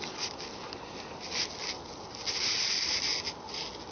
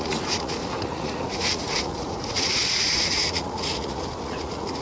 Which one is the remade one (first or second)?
second